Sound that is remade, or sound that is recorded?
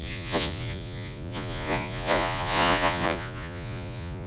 remade